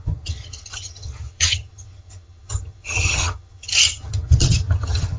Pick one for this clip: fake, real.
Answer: fake